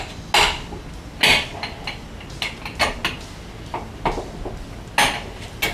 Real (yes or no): yes